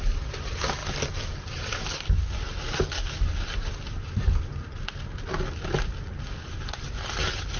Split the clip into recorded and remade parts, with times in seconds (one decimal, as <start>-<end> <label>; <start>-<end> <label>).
0.0-7.6 recorded